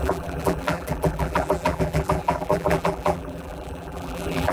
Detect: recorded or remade remade